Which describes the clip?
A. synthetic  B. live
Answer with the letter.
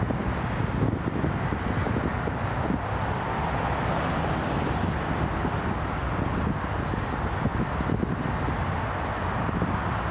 B